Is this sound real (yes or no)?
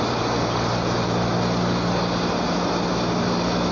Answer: yes